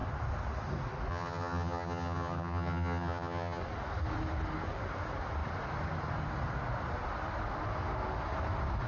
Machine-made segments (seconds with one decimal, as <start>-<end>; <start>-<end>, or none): 1.1-3.6